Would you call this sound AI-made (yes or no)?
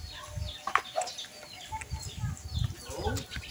no